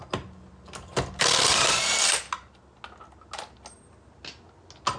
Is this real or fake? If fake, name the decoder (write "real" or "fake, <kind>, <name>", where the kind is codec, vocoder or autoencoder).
real